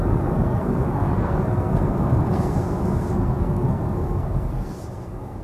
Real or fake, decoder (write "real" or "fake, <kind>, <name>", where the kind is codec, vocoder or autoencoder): fake, codec, SNAC